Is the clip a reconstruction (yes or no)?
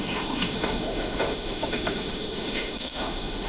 yes